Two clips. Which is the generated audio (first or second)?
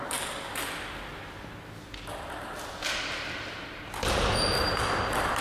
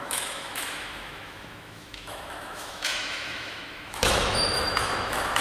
second